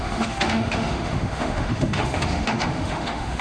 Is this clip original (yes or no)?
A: no